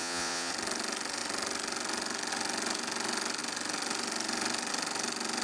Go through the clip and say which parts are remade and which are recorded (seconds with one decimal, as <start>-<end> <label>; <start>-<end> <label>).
0.0-0.5 remade; 0.5-5.4 recorded